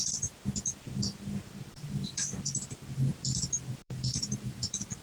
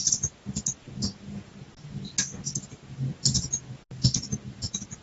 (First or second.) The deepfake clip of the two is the first